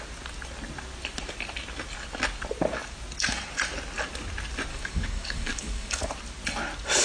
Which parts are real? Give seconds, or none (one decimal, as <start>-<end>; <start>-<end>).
0.0-4.7; 6.0-7.0